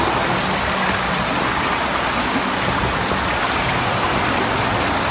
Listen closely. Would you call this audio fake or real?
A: real